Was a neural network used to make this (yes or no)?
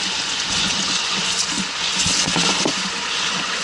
yes